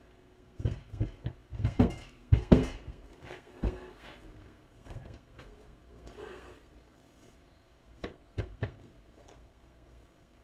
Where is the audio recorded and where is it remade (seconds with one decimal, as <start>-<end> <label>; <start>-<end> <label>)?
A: 0.0-10.4 remade